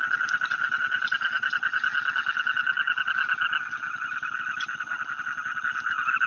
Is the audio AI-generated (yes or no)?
no